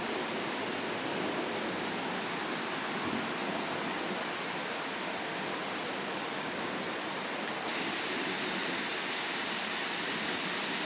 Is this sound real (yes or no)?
yes